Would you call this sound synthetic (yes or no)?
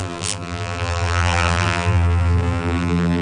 yes